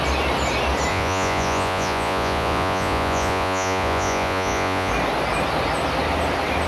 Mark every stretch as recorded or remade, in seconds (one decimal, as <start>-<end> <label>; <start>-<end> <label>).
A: 0.0-0.9 recorded; 0.9-4.9 remade; 4.9-6.7 recorded